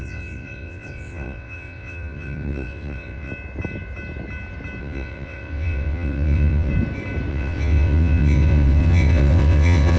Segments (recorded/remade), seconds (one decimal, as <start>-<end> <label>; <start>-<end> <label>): 0.0-3.3 remade; 3.3-4.8 recorded; 4.8-6.7 remade; 6.7-7.3 recorded; 7.3-10.0 remade